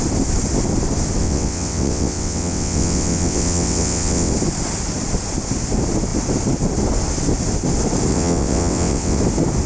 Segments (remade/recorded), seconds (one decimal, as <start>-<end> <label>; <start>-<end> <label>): 0.0-1.2 recorded; 1.2-4.3 remade; 4.3-8.1 recorded; 8.1-9.2 remade; 9.2-9.7 recorded